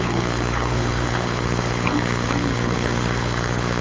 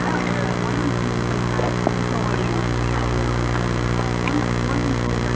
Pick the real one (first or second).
second